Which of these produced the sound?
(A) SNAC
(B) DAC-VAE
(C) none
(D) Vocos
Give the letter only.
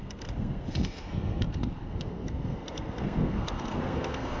A